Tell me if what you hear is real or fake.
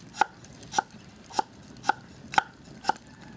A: real